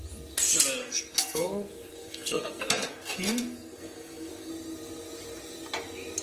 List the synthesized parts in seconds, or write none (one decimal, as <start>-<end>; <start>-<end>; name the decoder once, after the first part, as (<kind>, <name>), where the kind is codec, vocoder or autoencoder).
0.8-4.5 (codec, SNAC)